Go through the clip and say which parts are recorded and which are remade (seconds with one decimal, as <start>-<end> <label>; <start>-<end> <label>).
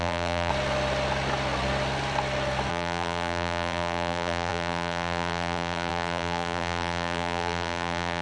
0.0-0.5 remade; 0.5-2.7 recorded; 2.7-8.2 remade